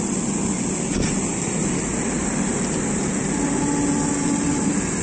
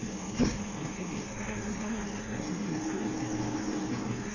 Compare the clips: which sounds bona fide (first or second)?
first